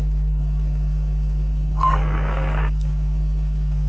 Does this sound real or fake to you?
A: fake